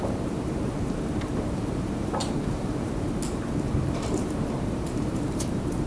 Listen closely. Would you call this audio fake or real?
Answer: fake